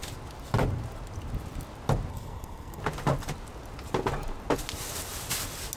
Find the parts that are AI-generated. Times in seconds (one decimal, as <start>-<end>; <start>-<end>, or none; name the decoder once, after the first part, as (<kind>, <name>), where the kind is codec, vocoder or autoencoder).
2.1-2.8 (codec, SNAC)